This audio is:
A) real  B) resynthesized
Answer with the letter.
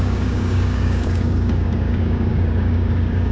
B